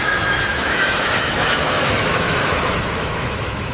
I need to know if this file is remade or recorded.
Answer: remade